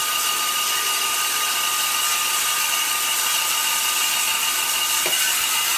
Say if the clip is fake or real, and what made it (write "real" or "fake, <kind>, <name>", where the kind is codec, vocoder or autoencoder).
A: real